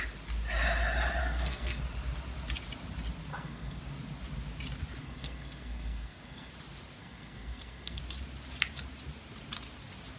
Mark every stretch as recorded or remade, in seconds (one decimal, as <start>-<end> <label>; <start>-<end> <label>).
0.0-1.2 recorded; 1.2-1.8 remade; 1.8-3.3 recorded; 3.3-3.8 remade; 3.8-5.0 recorded; 5.0-6.5 remade; 6.5-7.0 recorded; 7.0-8.0 remade; 8.0-10.2 recorded